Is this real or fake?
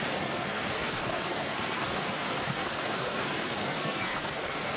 fake